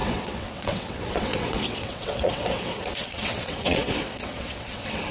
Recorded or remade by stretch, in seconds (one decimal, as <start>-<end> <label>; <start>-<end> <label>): 0.0-5.1 remade